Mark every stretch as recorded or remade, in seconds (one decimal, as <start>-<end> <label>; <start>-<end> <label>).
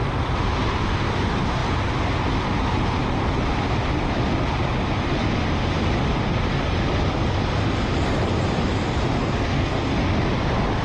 0.0-9.2 recorded; 9.2-9.9 remade; 9.9-10.8 recorded